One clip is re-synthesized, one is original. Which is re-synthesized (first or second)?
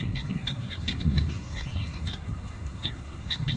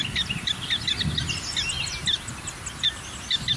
first